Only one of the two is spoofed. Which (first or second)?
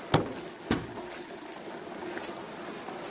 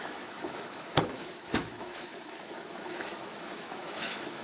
second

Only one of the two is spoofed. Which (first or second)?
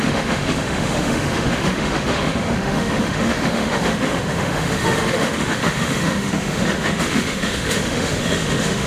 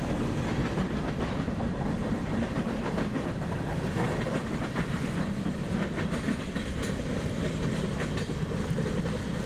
first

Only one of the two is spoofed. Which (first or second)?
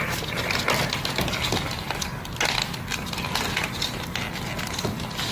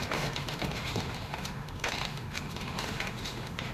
second